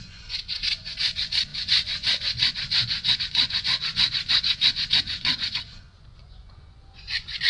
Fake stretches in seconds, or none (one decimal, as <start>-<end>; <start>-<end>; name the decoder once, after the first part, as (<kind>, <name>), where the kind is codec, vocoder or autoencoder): 0.0-7.5 (vocoder, Vocos)